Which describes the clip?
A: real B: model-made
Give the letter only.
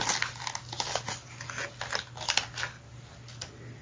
A